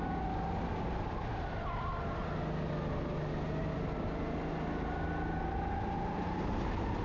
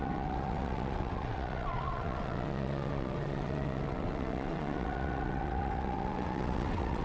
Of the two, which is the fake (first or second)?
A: second